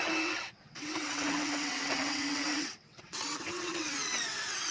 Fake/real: fake